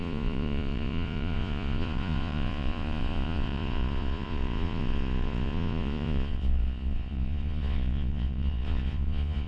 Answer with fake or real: fake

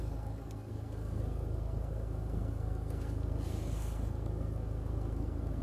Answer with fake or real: fake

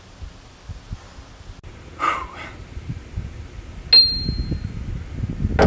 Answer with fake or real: real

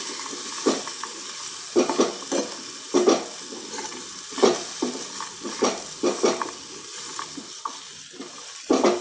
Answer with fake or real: real